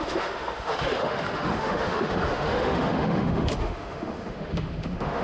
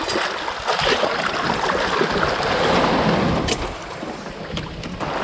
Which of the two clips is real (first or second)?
second